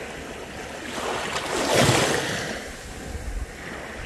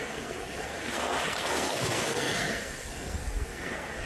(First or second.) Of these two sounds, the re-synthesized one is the second